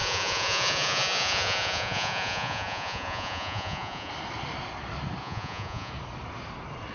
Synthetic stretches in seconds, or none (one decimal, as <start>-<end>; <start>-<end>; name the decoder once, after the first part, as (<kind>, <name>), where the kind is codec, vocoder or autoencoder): 0.0-4.1 (vocoder, Vocos); 5.2-5.9